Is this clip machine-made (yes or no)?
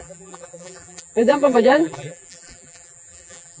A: yes